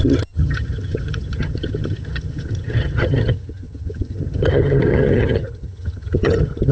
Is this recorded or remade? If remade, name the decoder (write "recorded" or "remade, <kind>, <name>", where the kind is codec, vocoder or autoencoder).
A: remade, vocoder, HiFi-GAN